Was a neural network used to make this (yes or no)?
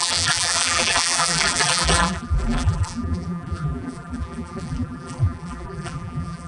yes